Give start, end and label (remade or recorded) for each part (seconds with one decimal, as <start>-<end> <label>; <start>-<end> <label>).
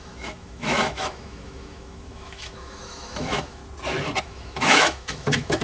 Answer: 0.0-3.6 remade; 3.6-4.2 recorded; 4.2-5.6 remade